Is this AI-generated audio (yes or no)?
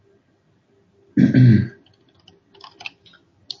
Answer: no